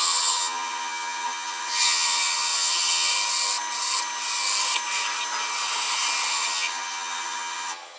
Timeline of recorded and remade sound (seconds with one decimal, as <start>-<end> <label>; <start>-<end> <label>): 0.0-3.1 remade; 3.1-6.3 recorded; 6.3-8.0 remade